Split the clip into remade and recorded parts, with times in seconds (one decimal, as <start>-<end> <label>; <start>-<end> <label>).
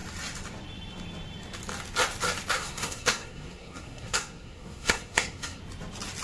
0.0-2.6 recorded; 2.6-5.6 remade; 5.6-6.2 recorded